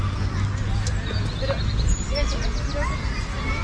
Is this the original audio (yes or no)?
yes